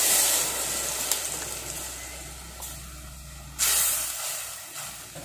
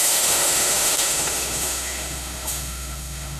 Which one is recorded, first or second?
first